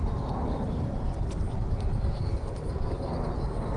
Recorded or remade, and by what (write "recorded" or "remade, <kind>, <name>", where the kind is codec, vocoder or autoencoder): recorded